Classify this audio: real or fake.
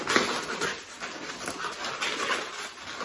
real